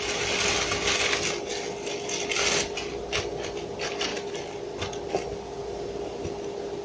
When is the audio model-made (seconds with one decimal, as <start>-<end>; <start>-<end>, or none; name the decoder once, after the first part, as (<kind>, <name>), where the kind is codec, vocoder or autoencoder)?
none